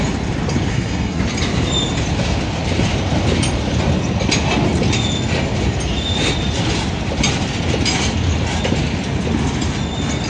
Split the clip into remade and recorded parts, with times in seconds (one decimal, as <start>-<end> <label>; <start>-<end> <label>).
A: 0.0-0.7 recorded; 0.7-1.2 remade; 1.2-10.3 recorded